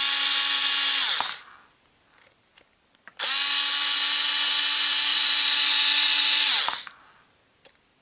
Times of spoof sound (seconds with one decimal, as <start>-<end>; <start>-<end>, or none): 5.1-6.6